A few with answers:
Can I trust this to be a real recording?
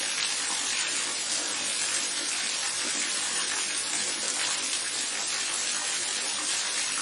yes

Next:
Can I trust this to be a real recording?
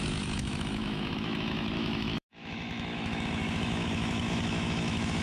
no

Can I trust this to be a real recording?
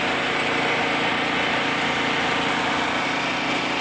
yes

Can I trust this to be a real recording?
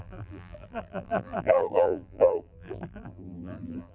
no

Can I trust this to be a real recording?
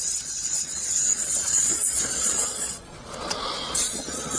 no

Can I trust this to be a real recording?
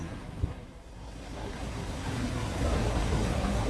no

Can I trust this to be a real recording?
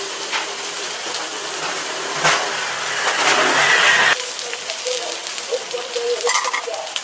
yes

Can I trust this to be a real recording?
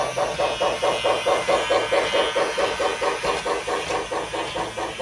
yes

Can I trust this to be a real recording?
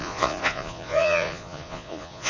no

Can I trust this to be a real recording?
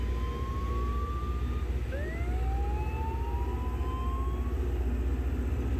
yes